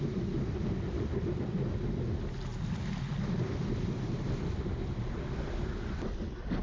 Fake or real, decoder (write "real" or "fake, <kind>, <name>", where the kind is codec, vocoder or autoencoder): real